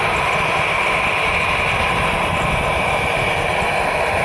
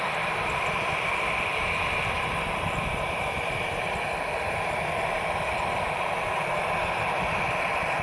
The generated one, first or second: second